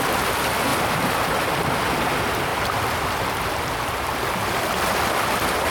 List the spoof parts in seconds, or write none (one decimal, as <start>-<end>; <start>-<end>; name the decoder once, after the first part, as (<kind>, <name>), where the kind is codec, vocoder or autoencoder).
0.7-1.5 (vocoder, BigVGAN v2); 2.5-5.3